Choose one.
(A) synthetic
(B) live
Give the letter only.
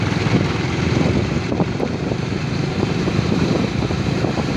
A